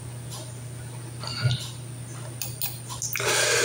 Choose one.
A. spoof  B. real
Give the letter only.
B